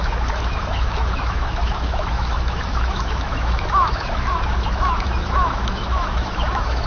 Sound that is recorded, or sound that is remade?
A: remade